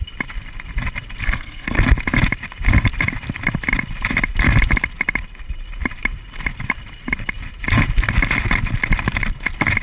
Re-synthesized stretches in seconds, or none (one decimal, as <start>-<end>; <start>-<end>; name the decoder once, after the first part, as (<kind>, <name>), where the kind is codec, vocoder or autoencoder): 1.2-1.8 (codec, SNAC)